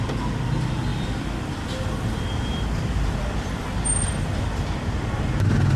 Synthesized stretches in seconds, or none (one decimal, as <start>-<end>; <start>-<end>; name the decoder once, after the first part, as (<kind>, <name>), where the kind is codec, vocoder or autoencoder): 0.9-2.9 (vocoder, BigVGAN v2)